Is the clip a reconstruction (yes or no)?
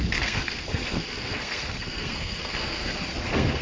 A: yes